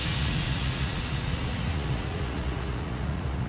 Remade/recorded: remade